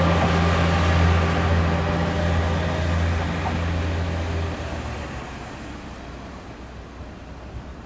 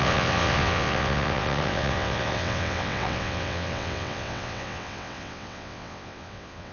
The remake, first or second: second